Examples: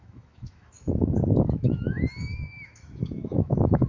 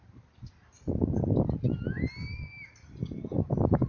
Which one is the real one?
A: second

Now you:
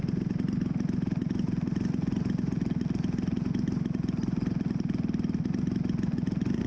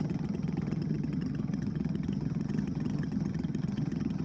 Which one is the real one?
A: first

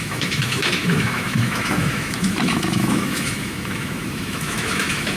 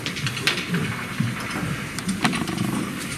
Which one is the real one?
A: second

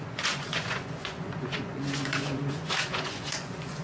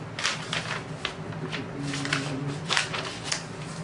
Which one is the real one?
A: second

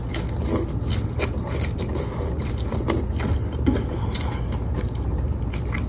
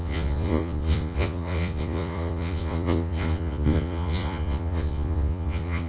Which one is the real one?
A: first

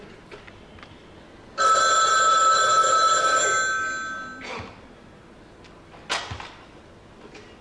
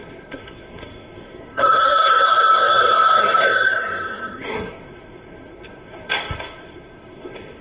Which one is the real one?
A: first